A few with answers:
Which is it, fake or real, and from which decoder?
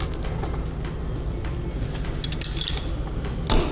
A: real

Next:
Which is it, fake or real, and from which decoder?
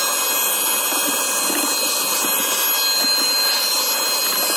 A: real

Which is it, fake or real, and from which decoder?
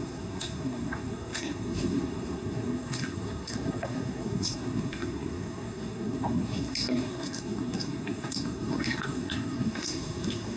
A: fake, codec, SNAC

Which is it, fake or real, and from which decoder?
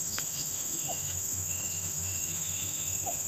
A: fake, autoencoder, DAC-VAE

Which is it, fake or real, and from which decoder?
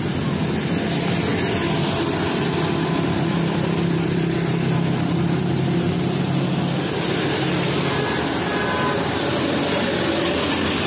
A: real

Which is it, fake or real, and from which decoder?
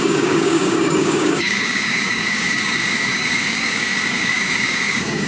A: fake, codec, DAC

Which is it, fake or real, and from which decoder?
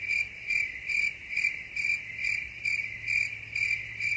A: fake, vocoder, BigVGAN v2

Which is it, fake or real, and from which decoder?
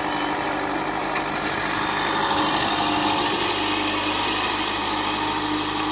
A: real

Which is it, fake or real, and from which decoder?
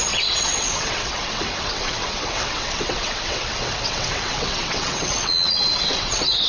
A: fake, vocoder, WaveNeXt